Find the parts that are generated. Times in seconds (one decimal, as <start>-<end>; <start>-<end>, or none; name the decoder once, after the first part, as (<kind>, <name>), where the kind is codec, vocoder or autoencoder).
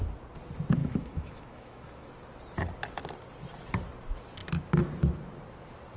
0.8-2.1 (autoencoder, DAC-VAE)